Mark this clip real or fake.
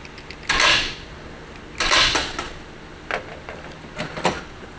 real